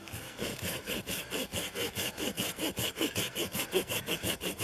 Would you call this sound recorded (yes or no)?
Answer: no